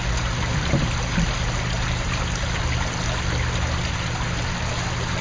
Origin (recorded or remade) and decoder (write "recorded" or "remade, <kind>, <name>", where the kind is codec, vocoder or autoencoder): recorded